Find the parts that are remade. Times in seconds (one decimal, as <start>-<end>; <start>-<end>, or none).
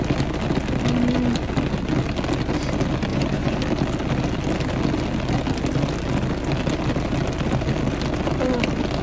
3.1-3.6